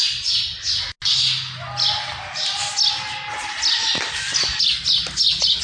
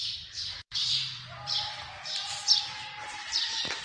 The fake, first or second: second